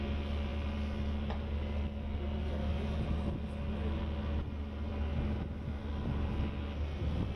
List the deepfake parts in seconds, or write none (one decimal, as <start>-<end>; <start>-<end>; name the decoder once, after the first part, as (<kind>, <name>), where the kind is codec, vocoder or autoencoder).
none